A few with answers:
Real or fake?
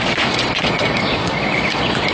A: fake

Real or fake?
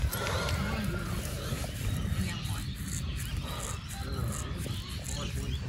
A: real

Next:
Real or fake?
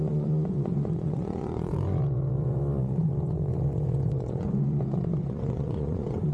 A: fake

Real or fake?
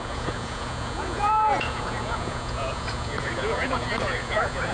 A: fake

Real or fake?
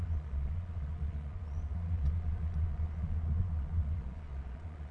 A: fake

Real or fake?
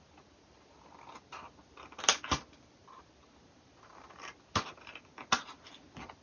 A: real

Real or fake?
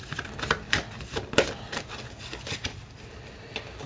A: real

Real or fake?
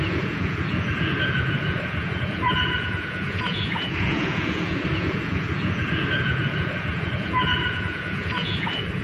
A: fake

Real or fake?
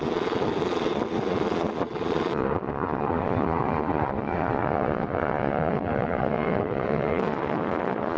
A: fake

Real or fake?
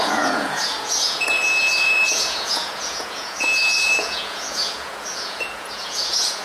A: fake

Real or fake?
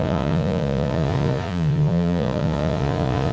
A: fake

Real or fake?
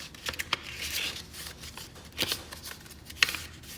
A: real